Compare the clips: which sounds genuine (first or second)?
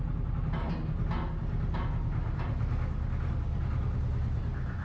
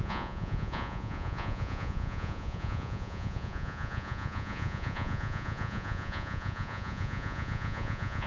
first